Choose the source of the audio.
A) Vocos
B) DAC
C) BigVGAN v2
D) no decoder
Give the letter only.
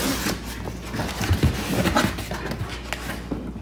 D